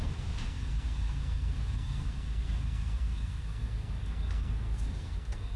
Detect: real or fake fake